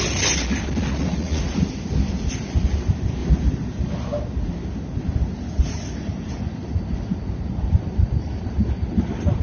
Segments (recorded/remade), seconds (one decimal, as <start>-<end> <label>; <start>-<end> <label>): 0.0-0.9 recorded; 0.9-1.4 remade; 1.4-9.4 recorded

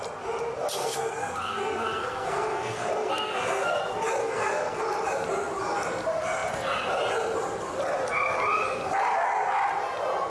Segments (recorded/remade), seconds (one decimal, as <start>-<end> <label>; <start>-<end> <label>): 0.0-0.8 recorded; 0.8-3.8 remade; 3.8-4.2 recorded; 4.2-4.8 remade; 4.8-10.3 recorded

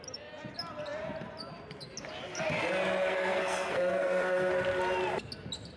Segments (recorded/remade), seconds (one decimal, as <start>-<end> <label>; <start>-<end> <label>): 0.0-3.0 recorded; 3.0-4.5 remade; 4.5-5.8 recorded

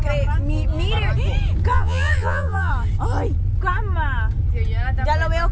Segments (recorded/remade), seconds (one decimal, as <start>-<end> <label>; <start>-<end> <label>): 0.0-1.7 recorded; 1.7-2.7 remade; 2.7-5.5 recorded